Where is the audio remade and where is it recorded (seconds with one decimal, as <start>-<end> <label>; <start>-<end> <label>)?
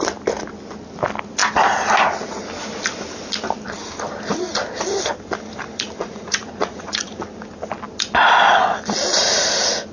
0.0-6.0 recorded; 6.0-7.2 remade; 7.2-9.9 recorded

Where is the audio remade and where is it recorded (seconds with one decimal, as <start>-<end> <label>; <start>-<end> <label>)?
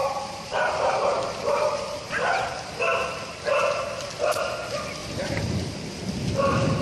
0.0-2.5 remade; 2.5-5.0 recorded; 5.0-5.8 remade; 5.8-6.8 recorded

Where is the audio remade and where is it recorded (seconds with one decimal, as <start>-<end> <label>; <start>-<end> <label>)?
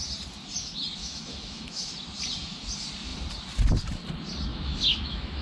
0.0-1.0 recorded; 1.0-1.9 remade; 1.9-4.5 recorded; 4.5-5.4 remade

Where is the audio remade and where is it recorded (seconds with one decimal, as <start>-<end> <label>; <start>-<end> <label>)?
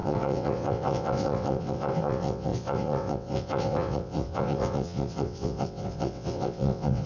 0.0-7.1 remade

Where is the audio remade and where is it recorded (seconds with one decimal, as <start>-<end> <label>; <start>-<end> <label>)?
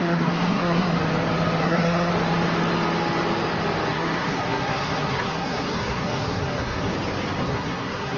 0.0-1.0 remade; 1.0-1.6 recorded; 1.6-2.1 remade; 2.1-3.9 recorded; 3.9-6.9 remade; 6.9-7.4 recorded; 7.4-8.2 remade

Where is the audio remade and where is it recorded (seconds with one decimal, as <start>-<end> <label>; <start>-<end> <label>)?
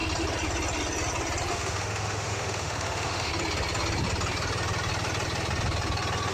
0.0-1.5 recorded; 1.5-3.3 remade; 3.3-6.3 recorded